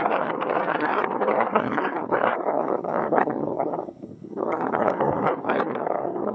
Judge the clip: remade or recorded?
remade